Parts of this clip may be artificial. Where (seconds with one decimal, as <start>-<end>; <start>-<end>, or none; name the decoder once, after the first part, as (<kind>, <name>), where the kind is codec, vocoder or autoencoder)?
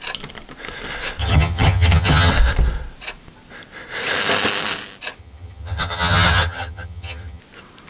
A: 1.2-2.3 (vocoder, HiFi-GAN); 5.2-7.4